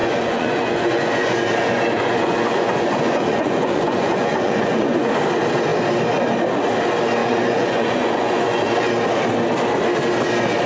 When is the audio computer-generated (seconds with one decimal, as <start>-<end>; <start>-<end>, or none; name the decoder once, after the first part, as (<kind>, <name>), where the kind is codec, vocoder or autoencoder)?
0.0-5.1 (vocoder, Vocos); 7.2-8.9